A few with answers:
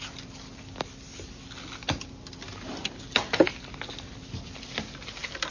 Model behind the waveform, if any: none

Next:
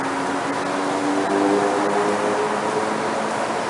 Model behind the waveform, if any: none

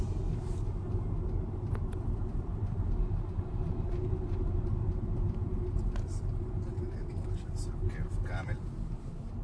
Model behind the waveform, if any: none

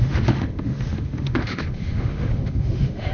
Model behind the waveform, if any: autoencoder, DAC-VAE